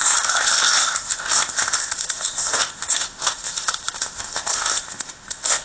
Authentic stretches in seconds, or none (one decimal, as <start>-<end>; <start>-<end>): none